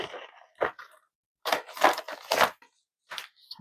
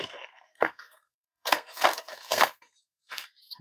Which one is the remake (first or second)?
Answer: second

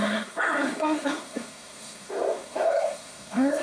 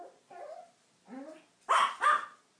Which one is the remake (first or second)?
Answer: first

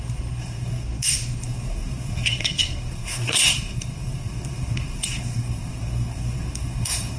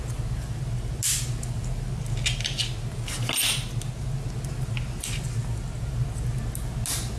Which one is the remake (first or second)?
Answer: first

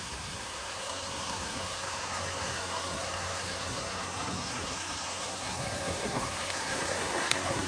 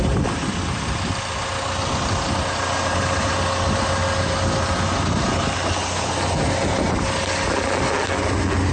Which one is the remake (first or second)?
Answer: first